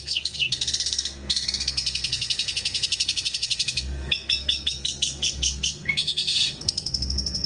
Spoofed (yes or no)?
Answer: yes